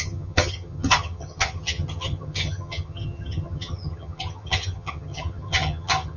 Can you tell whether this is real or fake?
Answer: fake